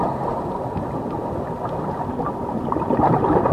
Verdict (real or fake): real